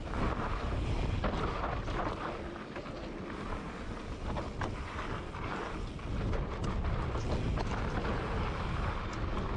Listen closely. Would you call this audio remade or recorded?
recorded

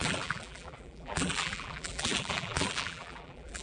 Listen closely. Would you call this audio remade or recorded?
remade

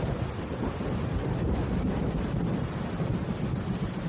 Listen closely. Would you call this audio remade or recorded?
recorded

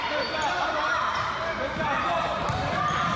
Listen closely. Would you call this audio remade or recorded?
remade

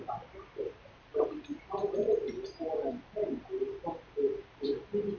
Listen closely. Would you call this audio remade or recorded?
recorded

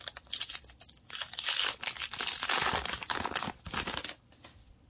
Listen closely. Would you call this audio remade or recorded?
recorded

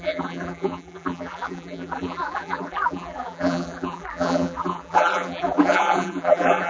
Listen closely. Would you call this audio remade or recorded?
remade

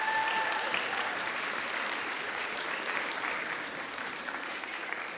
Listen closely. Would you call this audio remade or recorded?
remade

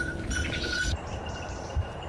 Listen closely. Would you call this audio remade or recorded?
remade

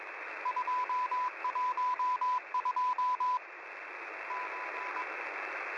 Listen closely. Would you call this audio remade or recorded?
recorded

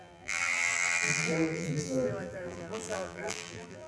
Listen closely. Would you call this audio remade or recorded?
remade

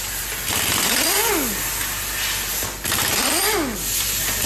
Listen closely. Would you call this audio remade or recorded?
recorded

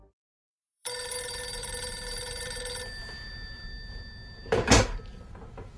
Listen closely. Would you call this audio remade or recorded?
remade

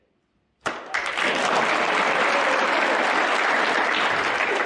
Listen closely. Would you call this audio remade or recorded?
recorded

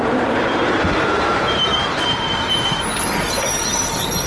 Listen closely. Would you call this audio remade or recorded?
remade